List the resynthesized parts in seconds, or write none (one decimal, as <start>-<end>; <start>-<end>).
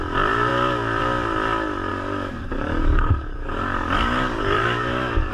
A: 1.9-5.3